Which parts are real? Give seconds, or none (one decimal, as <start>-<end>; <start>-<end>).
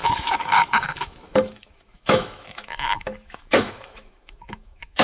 none